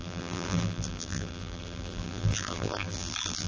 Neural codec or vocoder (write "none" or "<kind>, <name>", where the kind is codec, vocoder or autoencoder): vocoder, BigVGAN v2